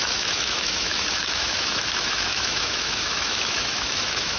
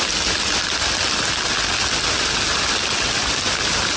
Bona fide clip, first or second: second